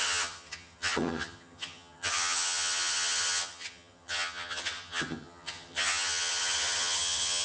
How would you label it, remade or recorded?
remade